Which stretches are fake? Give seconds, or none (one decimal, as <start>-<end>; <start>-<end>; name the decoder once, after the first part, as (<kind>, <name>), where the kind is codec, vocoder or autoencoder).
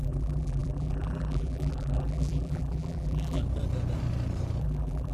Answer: 0.0-3.4 (vocoder, BigVGAN v2); 4.6-5.1